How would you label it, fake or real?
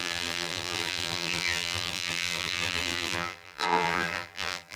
fake